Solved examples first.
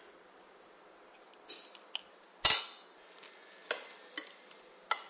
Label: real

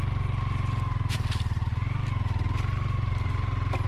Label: real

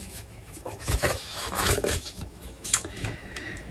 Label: fake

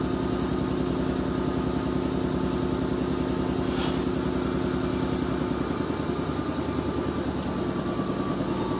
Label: real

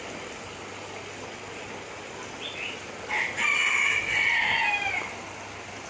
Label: real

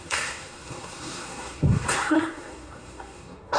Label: fake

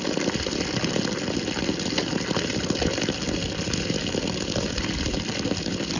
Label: real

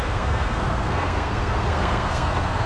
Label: fake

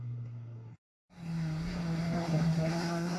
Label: fake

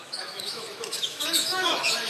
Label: fake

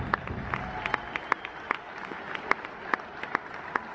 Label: real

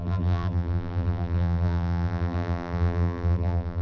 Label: fake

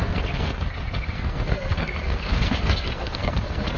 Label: fake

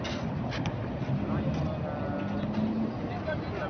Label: real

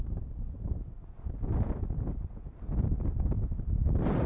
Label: real